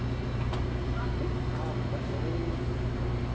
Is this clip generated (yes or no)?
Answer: no